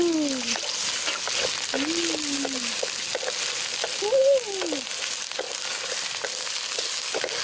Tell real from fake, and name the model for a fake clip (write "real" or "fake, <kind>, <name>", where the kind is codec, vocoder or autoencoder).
real